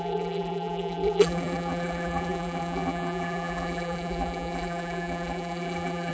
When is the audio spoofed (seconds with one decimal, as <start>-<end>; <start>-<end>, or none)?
0.0-6.1